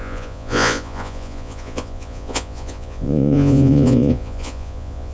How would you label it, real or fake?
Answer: fake